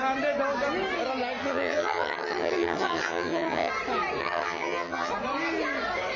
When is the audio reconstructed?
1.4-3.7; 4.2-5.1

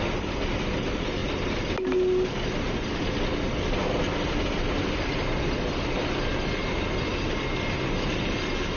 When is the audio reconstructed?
none

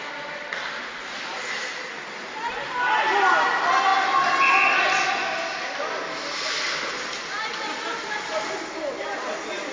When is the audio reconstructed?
none

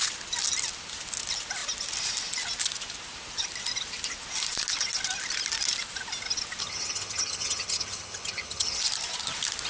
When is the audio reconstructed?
6.6-8.8